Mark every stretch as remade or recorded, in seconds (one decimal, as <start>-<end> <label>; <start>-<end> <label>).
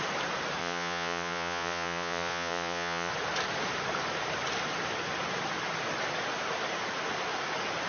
0.0-0.6 recorded; 0.6-3.1 remade; 3.1-7.9 recorded